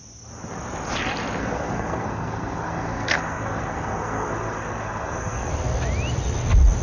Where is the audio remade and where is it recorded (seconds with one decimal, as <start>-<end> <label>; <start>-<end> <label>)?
0.0-1.4 recorded; 1.4-5.5 remade; 5.5-6.8 recorded